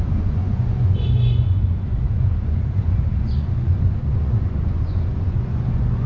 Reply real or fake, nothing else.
fake